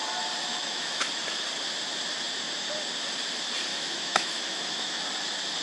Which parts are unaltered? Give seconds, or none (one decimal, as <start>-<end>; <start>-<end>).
0.0-0.5; 1.0-3.7; 5.0-5.6